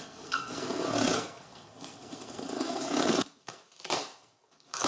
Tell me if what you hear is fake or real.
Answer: fake